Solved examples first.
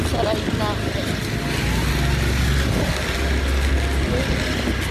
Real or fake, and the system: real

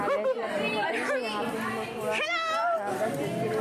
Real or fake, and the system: real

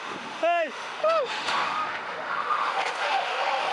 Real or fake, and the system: fake, autoencoder, DAC-VAE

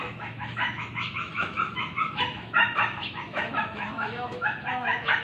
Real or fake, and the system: fake, autoencoder, DAC-VAE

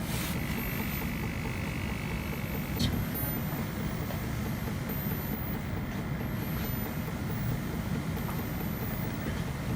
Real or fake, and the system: real